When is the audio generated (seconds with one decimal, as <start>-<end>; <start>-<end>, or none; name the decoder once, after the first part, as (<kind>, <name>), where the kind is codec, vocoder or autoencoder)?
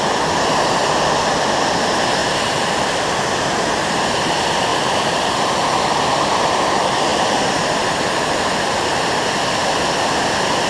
2.2-2.9 (vocoder, BigVGAN v2); 4.7-5.5